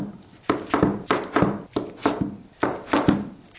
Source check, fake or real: real